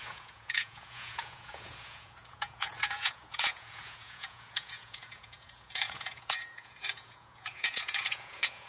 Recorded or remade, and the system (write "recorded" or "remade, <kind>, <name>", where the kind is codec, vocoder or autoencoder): remade, vocoder, Vocos